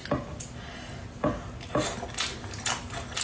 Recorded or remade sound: recorded